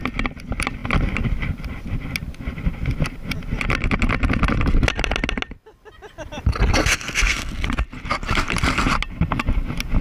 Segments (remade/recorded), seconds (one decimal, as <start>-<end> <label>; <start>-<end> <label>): 0.0-6.7 recorded; 6.7-7.5 remade; 7.5-10.0 recorded